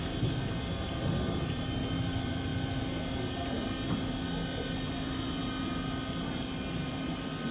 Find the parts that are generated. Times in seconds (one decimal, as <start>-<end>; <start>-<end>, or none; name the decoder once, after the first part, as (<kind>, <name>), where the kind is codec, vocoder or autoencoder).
none